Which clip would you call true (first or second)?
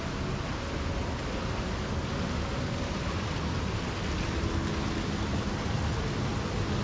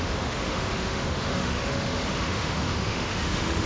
first